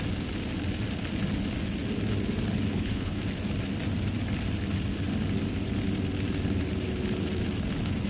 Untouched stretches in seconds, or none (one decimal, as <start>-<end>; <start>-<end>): 0.0-2.7; 3.2-8.1